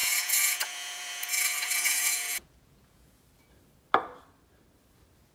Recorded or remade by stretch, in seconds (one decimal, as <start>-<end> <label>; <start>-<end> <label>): 0.0-3.2 remade; 3.2-5.3 recorded